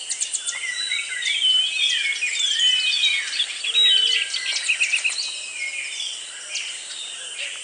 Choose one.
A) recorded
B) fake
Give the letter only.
A